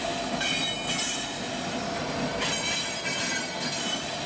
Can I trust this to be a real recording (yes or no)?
yes